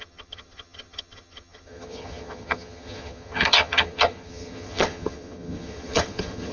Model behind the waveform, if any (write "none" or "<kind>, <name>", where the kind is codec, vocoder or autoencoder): vocoder, HiFi-GAN